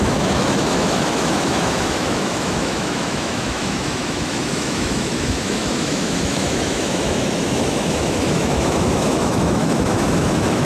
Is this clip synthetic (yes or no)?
yes